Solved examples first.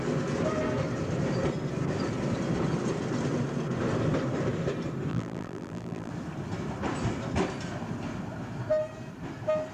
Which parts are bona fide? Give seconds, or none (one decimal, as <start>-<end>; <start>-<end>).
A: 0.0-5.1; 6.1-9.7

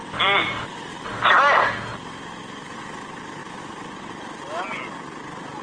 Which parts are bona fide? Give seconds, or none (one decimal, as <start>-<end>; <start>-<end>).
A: 1.1-1.9; 2.4-3.4; 4.0-5.6

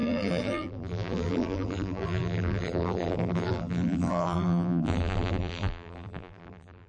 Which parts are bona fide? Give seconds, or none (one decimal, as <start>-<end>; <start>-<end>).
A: none